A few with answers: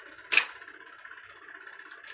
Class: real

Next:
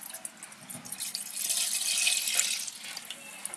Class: real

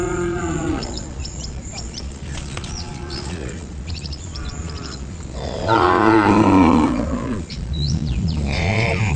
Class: fake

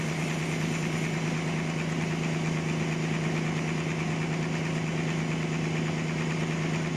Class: real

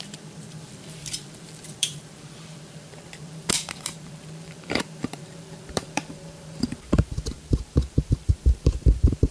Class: fake